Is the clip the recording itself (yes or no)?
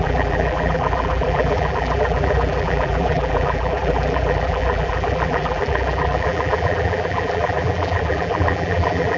no